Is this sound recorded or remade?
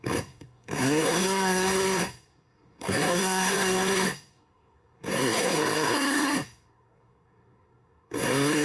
remade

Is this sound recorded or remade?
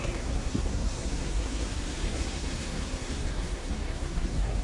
remade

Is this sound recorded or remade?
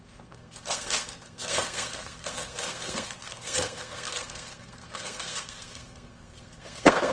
remade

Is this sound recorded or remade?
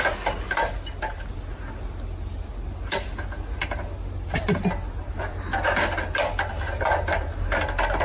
recorded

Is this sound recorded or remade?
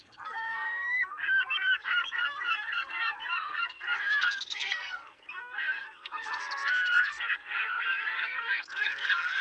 remade